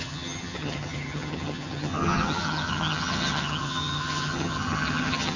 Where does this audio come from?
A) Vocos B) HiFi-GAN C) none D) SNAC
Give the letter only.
B